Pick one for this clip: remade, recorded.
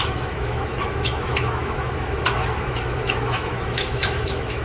remade